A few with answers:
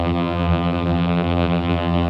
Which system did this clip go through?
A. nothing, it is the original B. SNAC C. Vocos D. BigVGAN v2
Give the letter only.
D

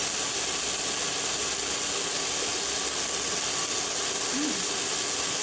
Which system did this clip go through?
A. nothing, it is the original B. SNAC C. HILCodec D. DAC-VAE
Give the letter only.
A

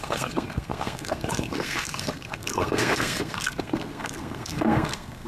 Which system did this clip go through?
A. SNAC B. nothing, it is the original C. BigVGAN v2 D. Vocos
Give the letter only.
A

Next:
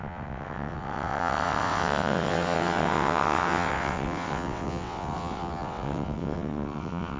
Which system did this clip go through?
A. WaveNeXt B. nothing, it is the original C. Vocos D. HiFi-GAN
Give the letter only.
A